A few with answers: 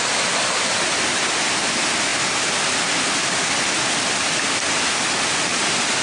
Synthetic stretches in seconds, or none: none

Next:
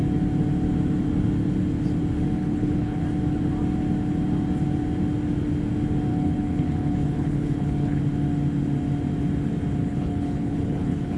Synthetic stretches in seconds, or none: 2.4-3.0 (codec, HILCodec); 6.1-8.0; 9.8-11.2

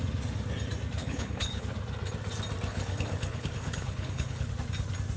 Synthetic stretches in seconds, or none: 1.0-1.6 (codec, HILCodec); 2.7-4.5

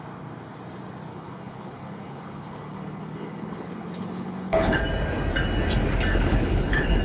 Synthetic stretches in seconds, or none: 1.1-4.8 (codec, HILCodec); 6.1-7.0